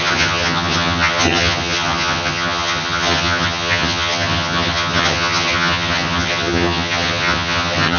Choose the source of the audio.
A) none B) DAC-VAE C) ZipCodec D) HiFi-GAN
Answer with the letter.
D